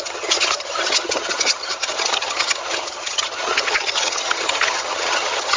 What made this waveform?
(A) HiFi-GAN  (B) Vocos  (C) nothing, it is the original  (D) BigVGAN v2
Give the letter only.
A